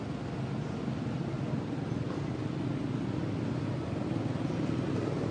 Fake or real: real